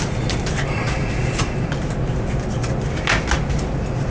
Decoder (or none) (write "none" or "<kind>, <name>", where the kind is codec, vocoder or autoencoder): none